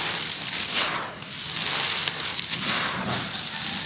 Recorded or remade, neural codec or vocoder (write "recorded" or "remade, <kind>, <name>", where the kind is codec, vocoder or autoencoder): recorded